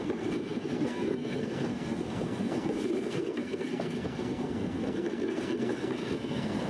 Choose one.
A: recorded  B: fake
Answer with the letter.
B